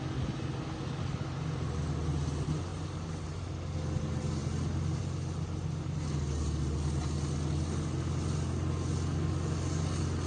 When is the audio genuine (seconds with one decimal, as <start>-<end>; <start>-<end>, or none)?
0.0-2.7; 3.5-10.3